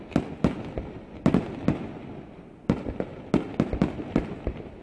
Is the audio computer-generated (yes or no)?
no